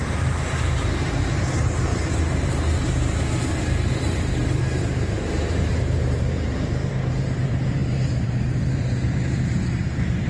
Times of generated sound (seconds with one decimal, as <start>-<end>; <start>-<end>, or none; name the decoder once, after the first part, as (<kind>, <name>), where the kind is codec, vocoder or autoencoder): 0.0-10.3 (vocoder, BigVGAN v2)